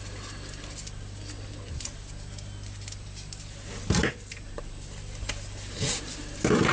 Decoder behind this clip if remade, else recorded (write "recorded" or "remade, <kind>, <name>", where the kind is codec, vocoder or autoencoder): recorded